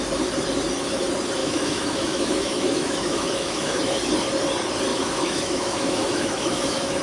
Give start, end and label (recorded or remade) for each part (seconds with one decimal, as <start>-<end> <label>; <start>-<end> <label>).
0.0-1.4 recorded; 1.4-4.0 remade; 4.0-4.9 recorded; 4.9-7.0 remade